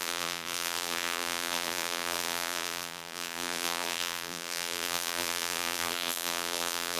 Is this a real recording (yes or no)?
no